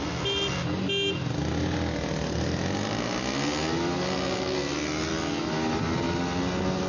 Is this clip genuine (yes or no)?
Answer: yes